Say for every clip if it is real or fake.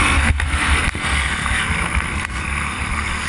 fake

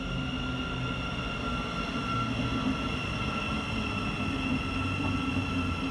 real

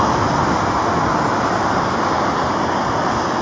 real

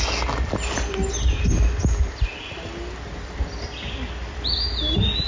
real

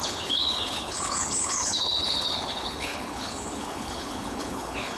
fake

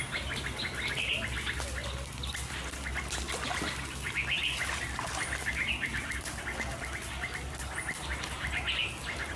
real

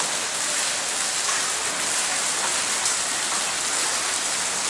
real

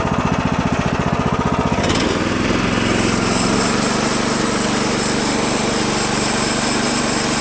real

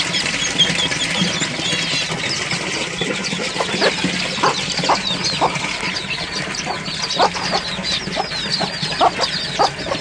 real